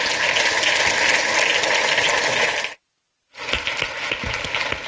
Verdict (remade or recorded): recorded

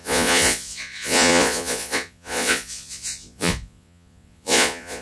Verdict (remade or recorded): remade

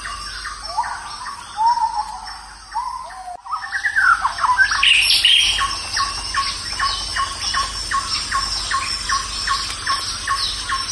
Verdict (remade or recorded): recorded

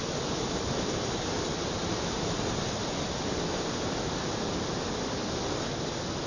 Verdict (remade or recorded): recorded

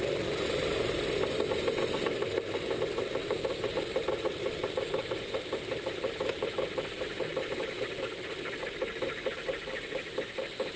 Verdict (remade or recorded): recorded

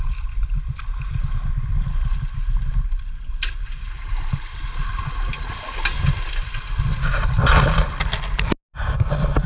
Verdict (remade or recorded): recorded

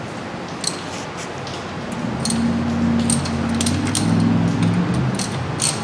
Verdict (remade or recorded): recorded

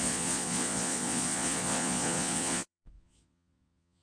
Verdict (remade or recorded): remade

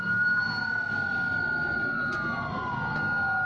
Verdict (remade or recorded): recorded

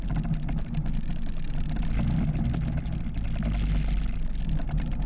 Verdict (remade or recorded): recorded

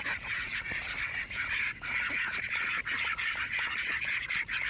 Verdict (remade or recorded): remade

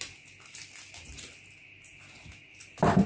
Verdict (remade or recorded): recorded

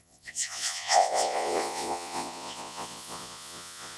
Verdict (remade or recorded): remade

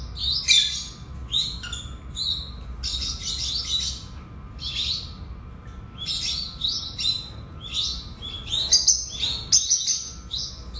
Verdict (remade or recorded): recorded